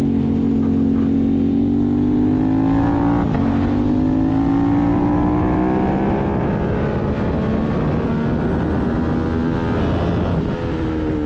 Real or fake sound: real